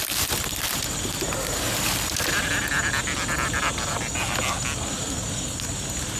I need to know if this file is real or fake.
real